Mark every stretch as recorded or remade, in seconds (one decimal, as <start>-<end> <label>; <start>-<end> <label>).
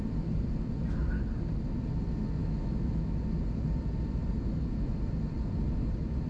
0.0-2.4 recorded; 2.4-3.2 remade; 3.2-6.3 recorded